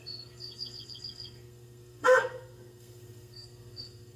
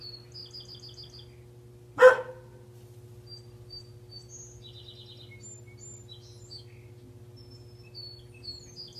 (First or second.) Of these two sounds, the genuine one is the second